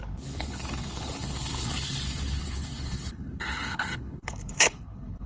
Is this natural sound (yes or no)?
no